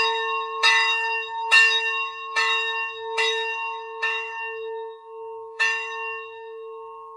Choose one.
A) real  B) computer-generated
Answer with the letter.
B